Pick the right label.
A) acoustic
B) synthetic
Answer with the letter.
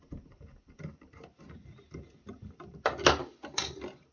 B